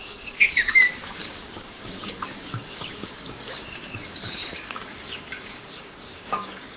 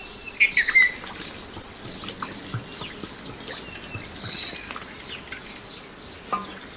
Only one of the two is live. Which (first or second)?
second